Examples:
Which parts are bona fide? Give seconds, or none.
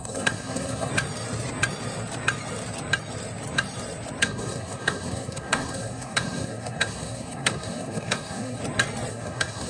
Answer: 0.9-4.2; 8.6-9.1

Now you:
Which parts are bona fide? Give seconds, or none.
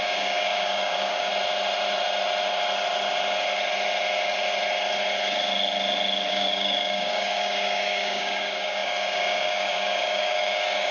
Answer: 1.3-6.3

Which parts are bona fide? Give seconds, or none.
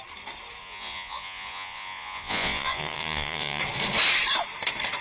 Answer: 0.0-0.6; 3.6-5.0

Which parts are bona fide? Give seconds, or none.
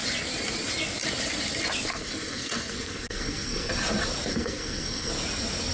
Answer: 0.0-1.9; 3.7-4.3; 5.1-5.7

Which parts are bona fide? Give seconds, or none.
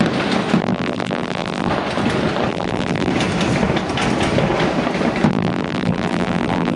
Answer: 0.0-0.6; 1.7-2.5; 3.1-5.3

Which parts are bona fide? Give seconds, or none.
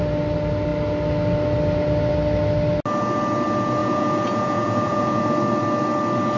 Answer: 0.0-3.8; 5.2-6.4